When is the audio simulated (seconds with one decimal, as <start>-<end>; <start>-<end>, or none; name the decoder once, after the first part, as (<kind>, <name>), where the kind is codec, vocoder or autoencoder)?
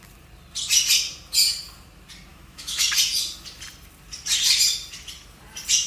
2.3-2.9 (autoencoder, DAC-VAE)